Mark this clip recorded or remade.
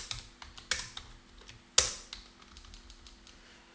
recorded